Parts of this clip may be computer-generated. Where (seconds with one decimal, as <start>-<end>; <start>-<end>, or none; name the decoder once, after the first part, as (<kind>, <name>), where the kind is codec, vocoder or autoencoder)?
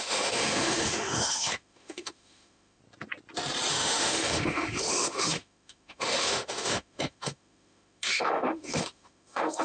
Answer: 0.0-2.8 (autoencoder, DAC-VAE); 3.7-9.6